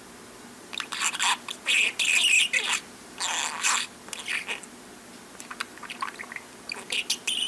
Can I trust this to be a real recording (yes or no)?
yes